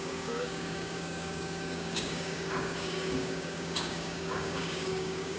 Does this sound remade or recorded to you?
remade